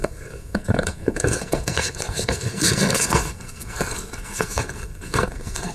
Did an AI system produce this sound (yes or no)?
yes